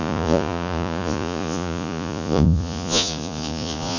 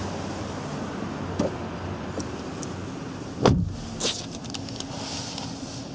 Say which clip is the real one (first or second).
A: second